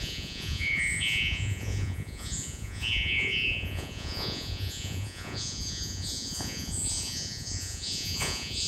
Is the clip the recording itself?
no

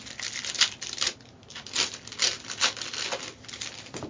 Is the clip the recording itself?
yes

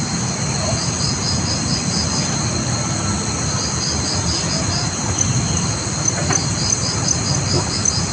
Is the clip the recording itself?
yes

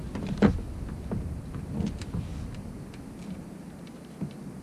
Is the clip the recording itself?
yes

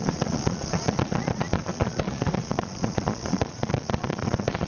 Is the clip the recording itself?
no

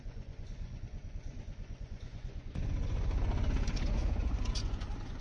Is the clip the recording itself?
no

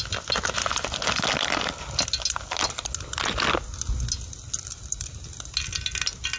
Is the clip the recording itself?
yes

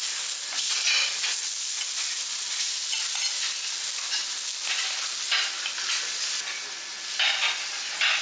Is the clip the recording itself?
yes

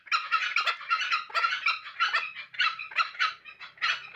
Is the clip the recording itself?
yes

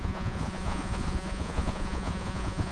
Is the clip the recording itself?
no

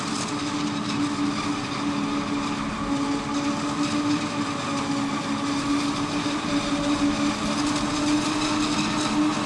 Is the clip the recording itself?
yes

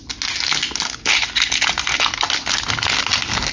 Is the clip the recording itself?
yes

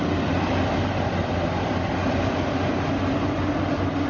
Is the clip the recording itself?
yes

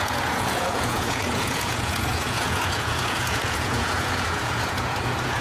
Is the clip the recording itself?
no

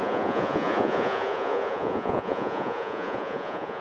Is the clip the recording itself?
no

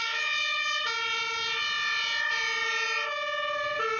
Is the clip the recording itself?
yes